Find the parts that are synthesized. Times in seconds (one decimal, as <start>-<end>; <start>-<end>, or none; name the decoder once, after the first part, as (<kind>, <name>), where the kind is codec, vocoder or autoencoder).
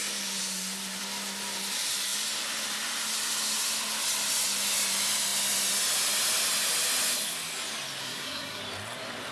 8.0-8.6 (codec, SNAC)